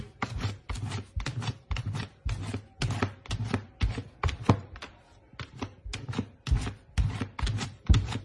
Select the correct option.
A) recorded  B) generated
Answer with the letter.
A